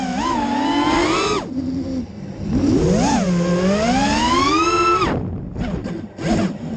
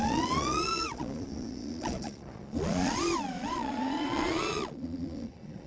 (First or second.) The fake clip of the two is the second